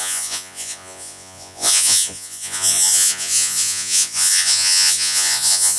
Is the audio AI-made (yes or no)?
yes